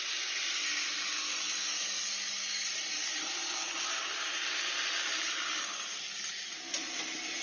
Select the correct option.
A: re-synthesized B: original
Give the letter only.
A